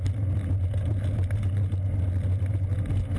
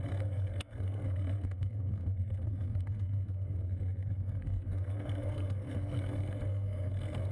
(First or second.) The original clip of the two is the first